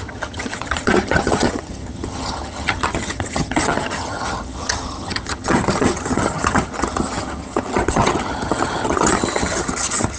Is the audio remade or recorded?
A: remade